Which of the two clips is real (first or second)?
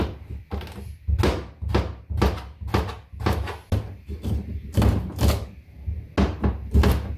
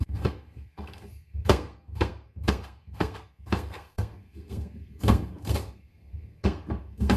first